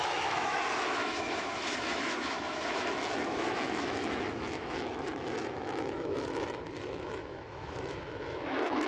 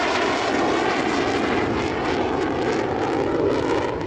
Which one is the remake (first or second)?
first